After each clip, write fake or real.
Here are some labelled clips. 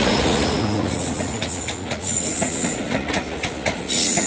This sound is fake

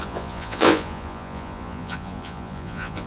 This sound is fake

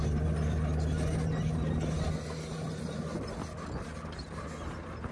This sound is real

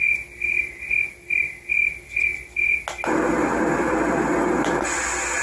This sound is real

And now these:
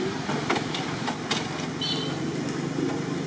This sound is real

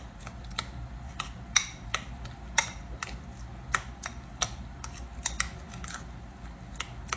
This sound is real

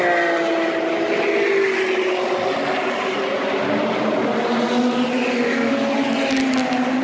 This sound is real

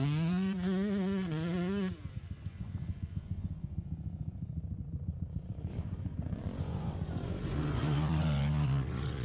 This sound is fake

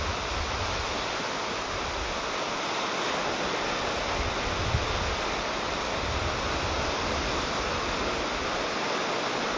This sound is real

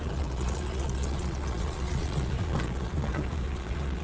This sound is fake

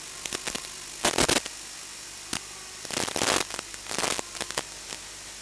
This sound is real